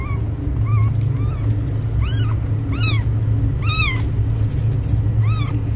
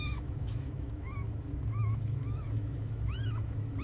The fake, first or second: second